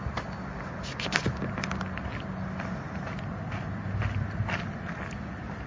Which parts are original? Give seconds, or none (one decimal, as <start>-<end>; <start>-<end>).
0.0-5.7